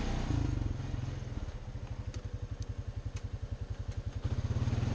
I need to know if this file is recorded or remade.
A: recorded